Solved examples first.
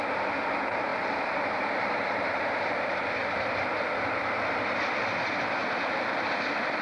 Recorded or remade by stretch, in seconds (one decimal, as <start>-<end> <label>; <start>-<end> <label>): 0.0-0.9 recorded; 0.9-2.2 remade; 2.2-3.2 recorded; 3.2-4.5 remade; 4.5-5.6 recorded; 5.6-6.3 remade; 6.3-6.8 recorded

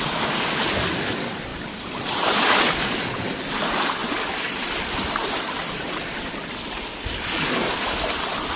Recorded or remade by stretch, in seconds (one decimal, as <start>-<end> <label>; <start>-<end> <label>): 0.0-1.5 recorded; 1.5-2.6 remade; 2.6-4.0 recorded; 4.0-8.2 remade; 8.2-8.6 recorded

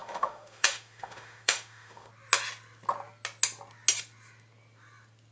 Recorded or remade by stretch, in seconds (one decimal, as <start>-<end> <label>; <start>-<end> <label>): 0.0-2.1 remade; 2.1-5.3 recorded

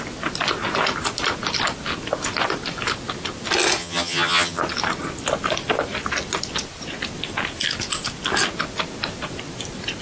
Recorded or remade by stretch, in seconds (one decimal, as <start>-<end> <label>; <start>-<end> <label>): 0.0-3.8 recorded; 3.8-4.6 remade; 4.6-10.0 recorded

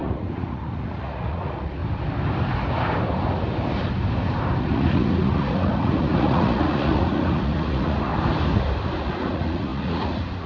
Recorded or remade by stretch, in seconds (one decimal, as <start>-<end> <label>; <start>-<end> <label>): 0.0-1.8 remade; 1.8-4.6 recorded; 4.6-8.1 remade; 8.1-9.0 recorded; 9.0-10.5 remade

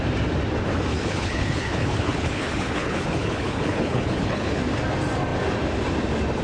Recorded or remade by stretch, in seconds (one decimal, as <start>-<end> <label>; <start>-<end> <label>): 0.0-0.9 recorded; 0.9-4.6 remade; 4.6-6.4 recorded

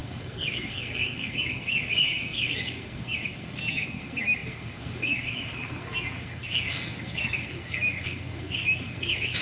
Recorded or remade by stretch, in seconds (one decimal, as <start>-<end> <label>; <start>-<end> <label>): 0.0-9.4 remade